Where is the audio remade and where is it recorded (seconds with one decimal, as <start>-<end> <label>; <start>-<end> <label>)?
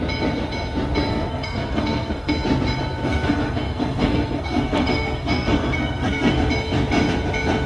0.0-1.1 recorded; 1.1-2.3 remade; 2.3-3.0 recorded; 3.0-6.5 remade; 6.5-7.7 recorded